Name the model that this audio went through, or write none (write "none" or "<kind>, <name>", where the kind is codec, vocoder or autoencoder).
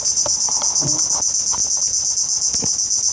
none